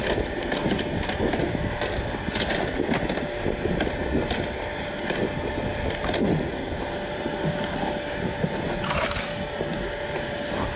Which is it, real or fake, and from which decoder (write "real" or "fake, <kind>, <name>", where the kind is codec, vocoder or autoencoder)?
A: real